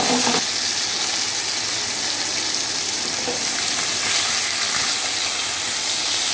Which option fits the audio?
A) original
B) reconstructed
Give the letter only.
A